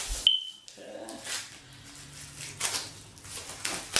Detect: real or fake real